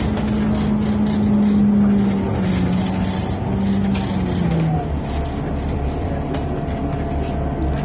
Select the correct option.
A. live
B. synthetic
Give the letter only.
A